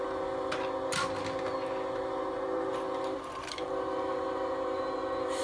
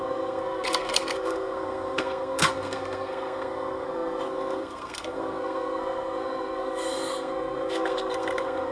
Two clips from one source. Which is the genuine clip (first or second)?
first